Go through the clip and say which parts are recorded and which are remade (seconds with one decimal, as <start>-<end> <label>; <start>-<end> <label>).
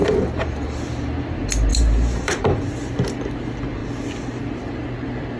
0.0-0.8 remade; 0.8-1.7 recorded; 1.7-2.6 remade; 2.6-5.4 recorded